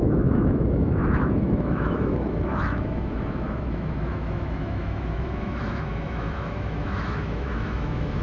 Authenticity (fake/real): fake